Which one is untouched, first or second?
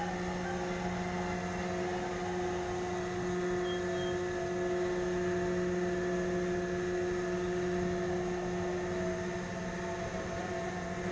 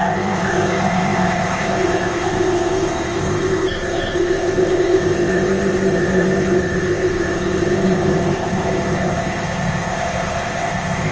first